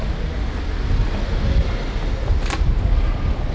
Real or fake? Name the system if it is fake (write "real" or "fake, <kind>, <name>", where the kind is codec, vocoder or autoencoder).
real